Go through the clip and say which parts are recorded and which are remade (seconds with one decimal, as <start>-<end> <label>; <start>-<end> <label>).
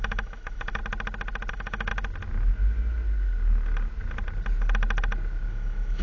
0.0-0.8 remade; 0.8-1.5 recorded; 1.5-1.9 remade; 1.9-5.5 recorded; 5.5-6.0 remade